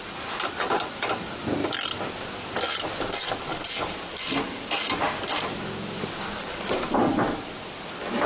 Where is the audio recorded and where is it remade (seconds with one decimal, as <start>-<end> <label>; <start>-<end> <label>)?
0.0-8.3 recorded